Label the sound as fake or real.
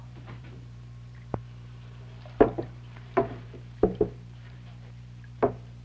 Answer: fake